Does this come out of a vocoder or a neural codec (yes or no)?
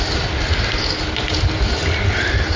no